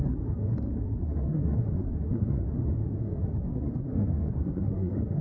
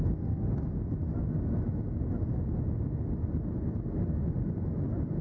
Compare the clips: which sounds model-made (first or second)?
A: first